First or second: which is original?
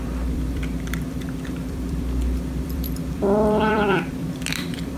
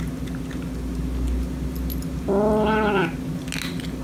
second